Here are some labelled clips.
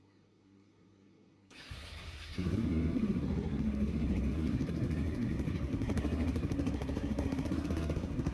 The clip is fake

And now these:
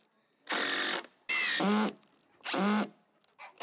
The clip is real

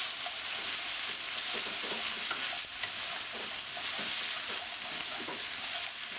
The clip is real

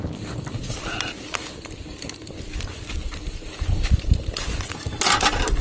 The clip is real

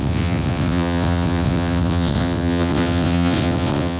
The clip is fake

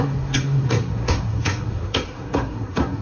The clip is fake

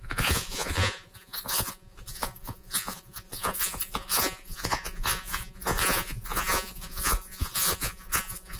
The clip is fake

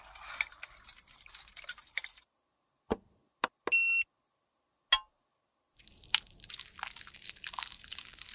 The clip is real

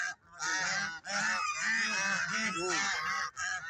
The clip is real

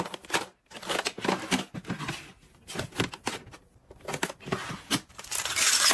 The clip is real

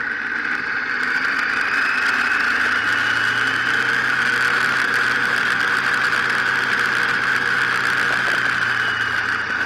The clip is real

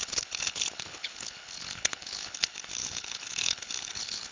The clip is fake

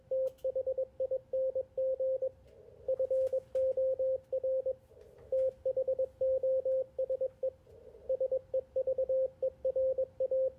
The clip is real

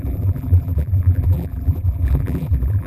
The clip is fake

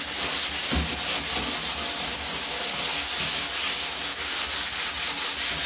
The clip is real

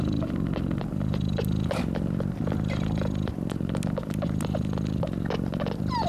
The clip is real